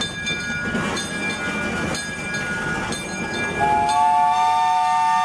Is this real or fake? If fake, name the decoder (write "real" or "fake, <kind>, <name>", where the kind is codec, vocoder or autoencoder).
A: real